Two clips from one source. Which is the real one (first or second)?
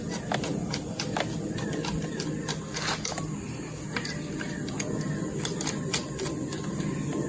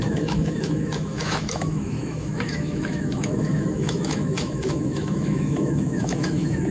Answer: first